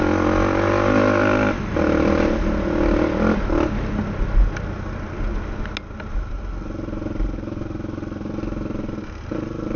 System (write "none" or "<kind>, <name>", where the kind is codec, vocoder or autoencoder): none